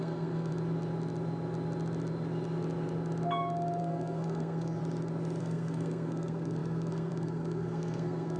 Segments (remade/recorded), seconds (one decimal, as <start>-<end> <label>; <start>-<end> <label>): 0.0-0.5 remade; 0.5-3.8 recorded; 3.8-4.8 remade; 4.8-5.4 recorded; 5.4-8.4 remade